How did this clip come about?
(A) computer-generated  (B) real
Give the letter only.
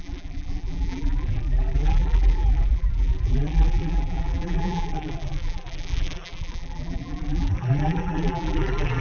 A